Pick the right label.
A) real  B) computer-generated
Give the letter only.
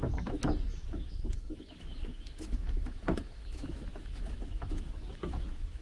B